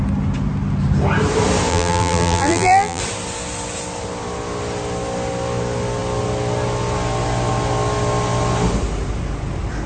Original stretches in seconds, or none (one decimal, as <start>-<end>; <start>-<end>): 0.0-1.7; 3.0-9.9